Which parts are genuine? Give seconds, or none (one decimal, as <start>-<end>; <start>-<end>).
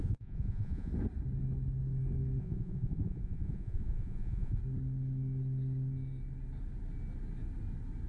0.9-2.4; 4.6-8.1